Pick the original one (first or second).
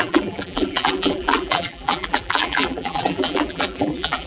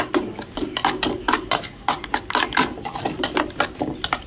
second